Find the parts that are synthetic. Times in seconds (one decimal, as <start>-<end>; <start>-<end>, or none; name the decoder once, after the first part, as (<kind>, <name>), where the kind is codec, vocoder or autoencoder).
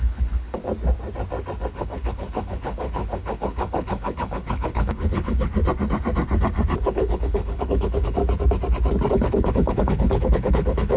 0.0-0.6 (codec, HILCodec); 1.7-5.5; 6.8-8.2; 9.1-11.0